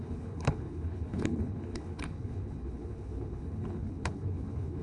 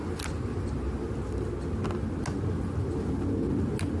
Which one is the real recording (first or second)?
second